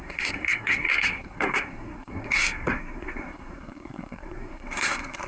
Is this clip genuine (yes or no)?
no